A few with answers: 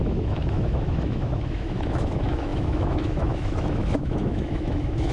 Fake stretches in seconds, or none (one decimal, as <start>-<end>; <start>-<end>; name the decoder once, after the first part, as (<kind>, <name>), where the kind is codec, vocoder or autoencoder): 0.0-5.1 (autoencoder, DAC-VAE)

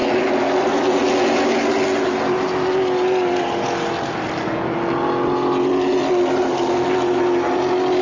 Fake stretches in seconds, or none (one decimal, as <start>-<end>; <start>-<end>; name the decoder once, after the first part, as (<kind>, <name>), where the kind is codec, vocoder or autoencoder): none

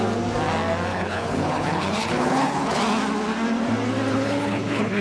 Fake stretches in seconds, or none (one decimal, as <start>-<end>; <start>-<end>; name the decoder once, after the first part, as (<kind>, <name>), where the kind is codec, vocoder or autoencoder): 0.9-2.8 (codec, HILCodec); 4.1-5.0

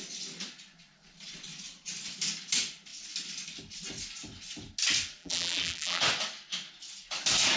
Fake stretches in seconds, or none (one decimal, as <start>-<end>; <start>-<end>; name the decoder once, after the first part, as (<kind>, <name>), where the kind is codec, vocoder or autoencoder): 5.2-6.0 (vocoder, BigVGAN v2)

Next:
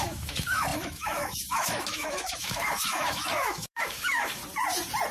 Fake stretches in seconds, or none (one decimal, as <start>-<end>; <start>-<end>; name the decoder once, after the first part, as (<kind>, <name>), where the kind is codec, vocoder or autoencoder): 0.0-4.4 (autoencoder, DAC-VAE)

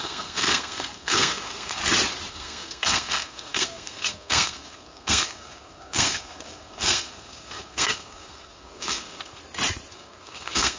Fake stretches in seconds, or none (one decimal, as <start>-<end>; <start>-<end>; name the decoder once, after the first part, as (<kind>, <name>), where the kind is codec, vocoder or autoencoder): 0.0-1.8 (codec, SNAC); 2.3-9.4; 9.9-10.8